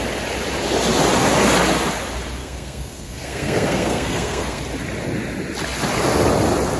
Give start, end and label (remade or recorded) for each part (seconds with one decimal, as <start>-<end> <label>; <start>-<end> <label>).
0.0-2.4 recorded; 2.4-4.6 remade; 4.6-6.8 recorded